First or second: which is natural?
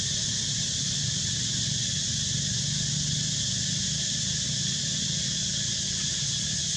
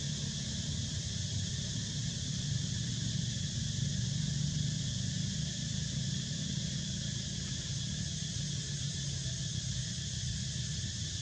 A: first